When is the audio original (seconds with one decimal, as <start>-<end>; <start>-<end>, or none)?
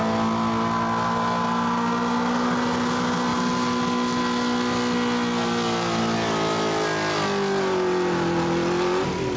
0.0-9.4